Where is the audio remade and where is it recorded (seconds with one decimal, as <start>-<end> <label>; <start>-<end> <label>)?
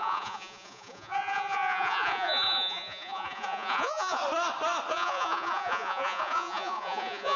0.0-4.2 remade; 4.2-4.9 recorded; 4.9-7.4 remade